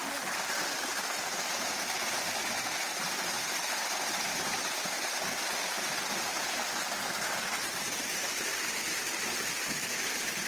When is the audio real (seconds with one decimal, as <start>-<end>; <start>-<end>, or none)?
0.0-7.5; 8.9-10.5